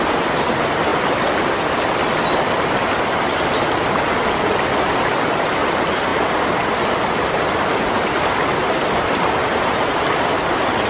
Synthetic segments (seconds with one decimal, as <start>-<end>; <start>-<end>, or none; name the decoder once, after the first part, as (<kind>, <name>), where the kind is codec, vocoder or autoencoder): 0.9-3.0 (vocoder, BigVGAN v2); 6.1-8.3